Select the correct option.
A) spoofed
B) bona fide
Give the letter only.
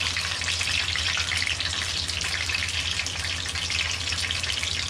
B